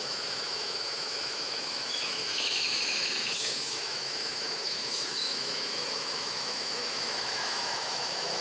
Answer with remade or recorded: remade